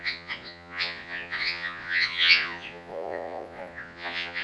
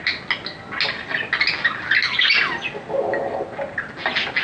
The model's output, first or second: first